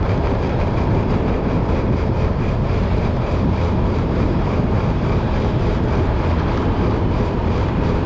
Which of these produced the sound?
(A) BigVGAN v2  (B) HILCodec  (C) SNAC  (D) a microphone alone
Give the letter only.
A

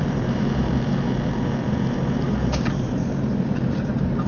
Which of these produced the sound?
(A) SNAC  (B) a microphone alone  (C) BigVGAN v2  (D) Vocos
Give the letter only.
C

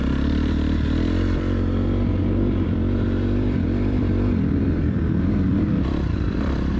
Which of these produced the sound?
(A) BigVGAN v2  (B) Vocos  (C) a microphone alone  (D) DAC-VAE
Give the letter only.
A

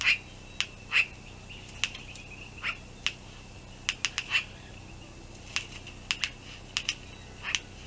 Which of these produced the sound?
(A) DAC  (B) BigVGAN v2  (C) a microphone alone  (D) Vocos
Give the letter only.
C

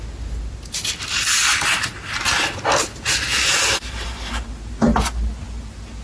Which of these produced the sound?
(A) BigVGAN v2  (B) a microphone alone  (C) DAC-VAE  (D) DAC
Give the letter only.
B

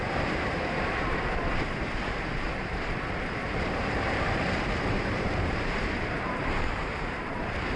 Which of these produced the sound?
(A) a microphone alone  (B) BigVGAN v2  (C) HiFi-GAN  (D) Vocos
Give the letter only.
B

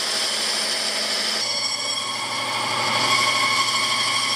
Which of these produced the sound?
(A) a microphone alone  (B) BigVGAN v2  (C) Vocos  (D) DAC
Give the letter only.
A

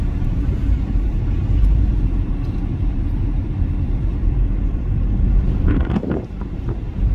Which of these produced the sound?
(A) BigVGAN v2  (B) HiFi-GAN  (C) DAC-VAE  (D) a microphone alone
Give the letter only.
A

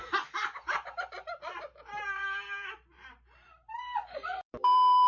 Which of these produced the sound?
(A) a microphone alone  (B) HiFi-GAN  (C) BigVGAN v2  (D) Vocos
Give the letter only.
C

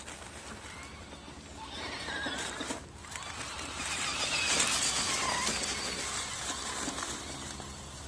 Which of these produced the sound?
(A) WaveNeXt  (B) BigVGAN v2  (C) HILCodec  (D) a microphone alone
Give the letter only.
B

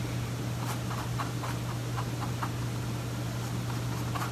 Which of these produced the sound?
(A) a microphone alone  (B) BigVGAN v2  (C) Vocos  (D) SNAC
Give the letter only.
A